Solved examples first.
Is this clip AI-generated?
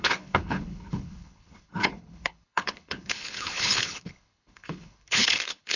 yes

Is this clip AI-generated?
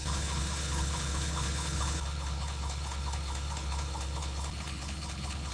yes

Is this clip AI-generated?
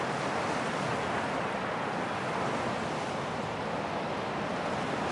no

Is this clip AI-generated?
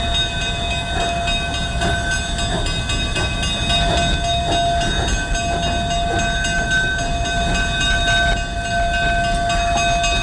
no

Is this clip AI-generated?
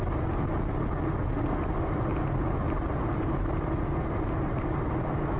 no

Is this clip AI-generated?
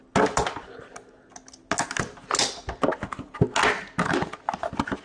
no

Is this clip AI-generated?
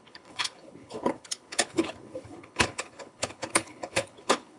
yes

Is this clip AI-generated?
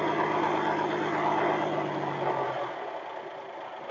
no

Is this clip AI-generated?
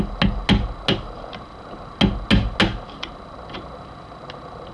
no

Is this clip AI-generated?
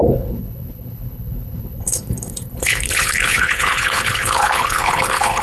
yes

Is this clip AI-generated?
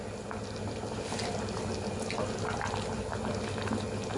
no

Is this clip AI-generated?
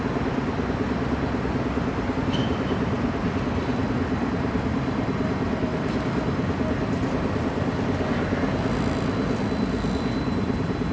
no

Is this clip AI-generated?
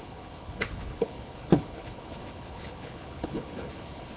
yes